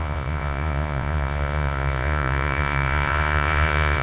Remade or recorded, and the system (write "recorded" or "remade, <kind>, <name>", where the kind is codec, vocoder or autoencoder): remade, vocoder, Vocos